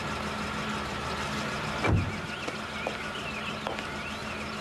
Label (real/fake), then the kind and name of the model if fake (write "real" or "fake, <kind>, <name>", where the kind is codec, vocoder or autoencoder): real